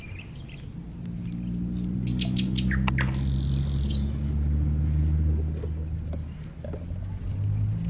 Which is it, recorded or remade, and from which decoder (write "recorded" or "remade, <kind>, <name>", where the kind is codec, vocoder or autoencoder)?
recorded